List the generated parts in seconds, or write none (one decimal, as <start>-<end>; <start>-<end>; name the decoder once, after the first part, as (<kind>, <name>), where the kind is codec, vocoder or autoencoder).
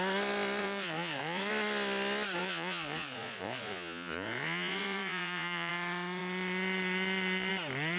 0.6-1.5 (vocoder, Vocos); 2.4-5.7